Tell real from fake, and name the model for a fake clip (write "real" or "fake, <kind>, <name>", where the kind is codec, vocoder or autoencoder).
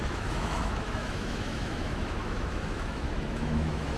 fake, autoencoder, DAC-VAE